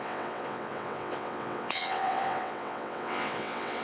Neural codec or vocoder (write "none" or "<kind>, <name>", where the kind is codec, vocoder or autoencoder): vocoder, WaveNeXt